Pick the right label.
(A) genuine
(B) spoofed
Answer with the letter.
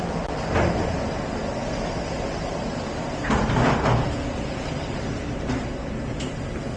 A